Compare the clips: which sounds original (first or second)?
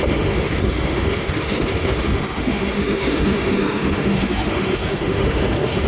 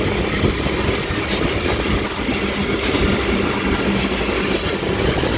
second